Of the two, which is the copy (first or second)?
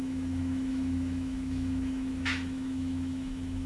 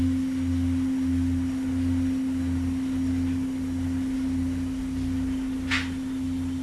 first